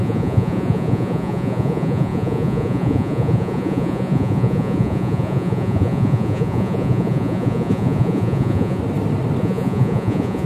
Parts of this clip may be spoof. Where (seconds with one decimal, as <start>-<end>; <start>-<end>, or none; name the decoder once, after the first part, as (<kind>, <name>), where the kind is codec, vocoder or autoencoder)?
0.0-8.8 (vocoder, Vocos); 9.4-10.5